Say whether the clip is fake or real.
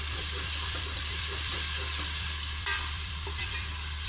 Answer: fake